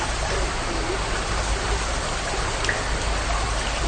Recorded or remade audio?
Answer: recorded